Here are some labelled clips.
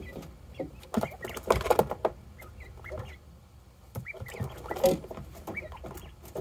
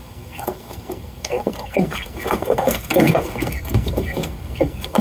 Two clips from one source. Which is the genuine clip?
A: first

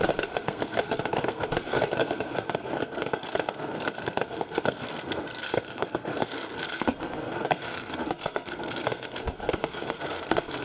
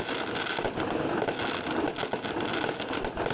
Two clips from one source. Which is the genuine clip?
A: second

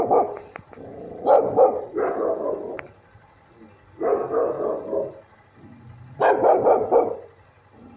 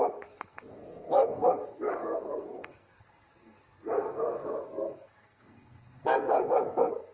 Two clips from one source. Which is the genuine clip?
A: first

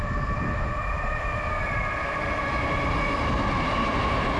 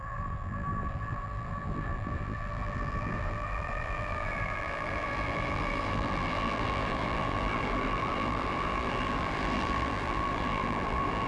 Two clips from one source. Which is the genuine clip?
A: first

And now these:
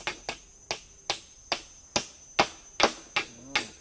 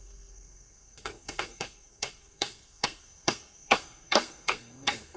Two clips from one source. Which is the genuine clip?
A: first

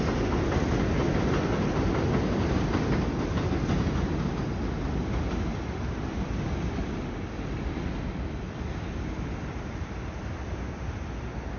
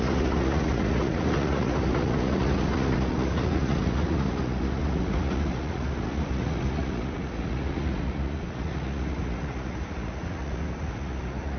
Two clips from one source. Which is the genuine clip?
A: first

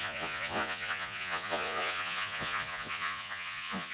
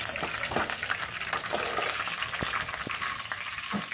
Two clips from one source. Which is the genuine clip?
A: second